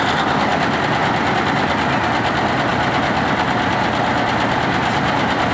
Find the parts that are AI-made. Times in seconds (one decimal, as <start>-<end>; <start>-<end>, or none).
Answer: none